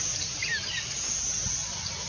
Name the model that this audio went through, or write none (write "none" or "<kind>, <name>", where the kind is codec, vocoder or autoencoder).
none